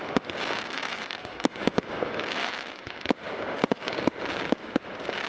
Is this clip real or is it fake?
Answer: fake